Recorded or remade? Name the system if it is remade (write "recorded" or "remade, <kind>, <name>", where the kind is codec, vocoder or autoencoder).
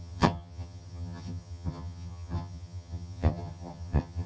remade, vocoder, HiFi-GAN